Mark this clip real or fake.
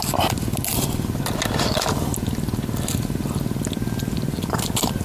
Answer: real